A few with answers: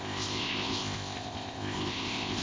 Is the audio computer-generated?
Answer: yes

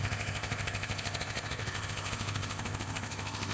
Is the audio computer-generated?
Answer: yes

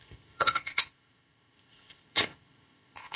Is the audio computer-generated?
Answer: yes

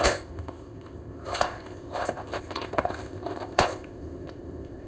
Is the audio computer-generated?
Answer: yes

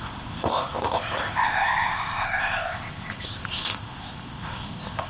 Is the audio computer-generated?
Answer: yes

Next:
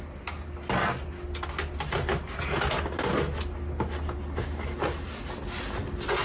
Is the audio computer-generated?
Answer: no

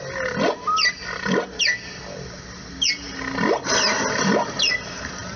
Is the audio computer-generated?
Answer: no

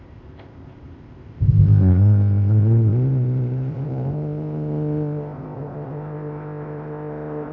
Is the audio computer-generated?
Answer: yes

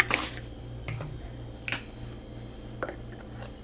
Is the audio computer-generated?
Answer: no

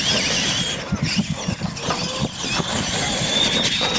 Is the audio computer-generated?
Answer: no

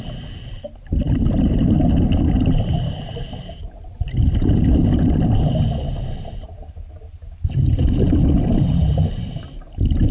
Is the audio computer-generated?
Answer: no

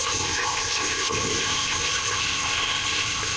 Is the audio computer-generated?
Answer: yes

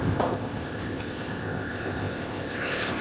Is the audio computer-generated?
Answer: yes